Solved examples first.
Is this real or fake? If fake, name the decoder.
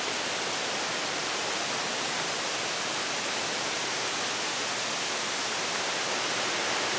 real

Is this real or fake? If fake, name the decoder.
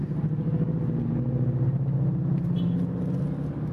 real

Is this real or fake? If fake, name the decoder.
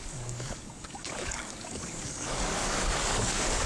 fake, codec, DAC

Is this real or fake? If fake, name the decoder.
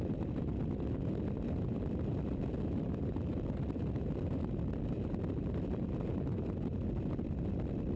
real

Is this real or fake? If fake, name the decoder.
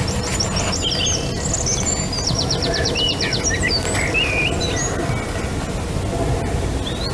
real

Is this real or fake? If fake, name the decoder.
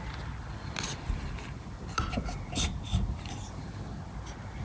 real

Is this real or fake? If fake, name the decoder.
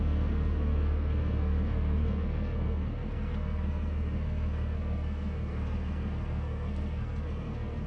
fake, codec, SNAC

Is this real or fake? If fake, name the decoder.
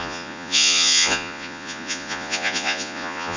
fake, vocoder, Vocos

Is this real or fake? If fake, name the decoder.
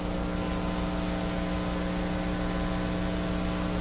real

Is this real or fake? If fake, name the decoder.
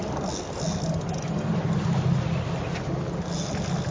real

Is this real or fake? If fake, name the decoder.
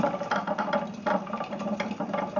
real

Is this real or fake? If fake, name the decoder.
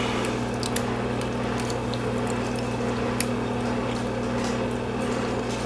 real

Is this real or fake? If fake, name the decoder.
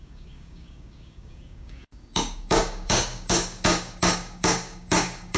fake, codec, DAC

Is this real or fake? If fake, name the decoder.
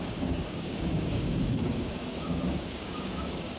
fake, codec, DAC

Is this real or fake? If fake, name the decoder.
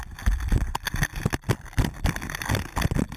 real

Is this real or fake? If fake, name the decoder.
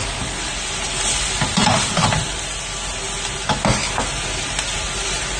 real